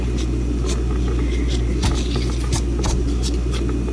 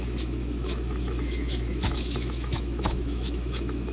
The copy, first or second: second